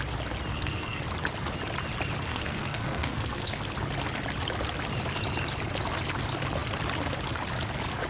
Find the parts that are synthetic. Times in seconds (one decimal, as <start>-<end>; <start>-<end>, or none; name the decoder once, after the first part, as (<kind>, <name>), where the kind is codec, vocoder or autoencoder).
0.5-1.0 (codec, SNAC); 2.3-3.6